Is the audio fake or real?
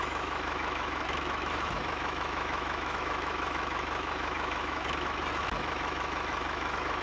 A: fake